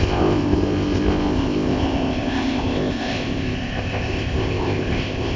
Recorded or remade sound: remade